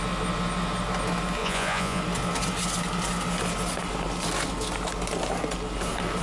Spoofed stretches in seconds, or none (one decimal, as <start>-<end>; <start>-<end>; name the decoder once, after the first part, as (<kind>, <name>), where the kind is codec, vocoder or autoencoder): 1.4-2.0 (vocoder, Vocos)